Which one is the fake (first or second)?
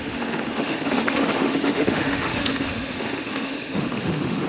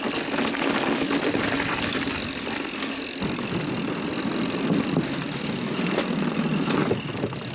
first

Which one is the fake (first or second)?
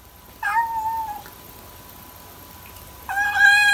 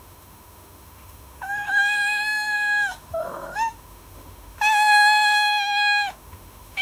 second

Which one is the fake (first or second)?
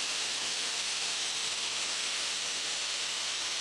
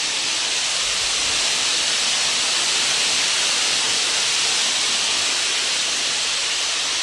first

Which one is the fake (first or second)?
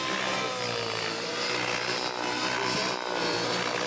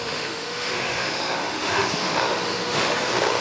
second